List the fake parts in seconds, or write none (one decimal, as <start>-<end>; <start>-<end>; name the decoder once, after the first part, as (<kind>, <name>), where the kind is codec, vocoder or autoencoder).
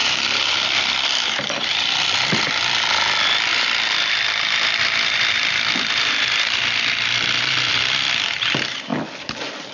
0.0-2.5 (vocoder, BigVGAN v2); 3.5-7.7; 8.9-9.7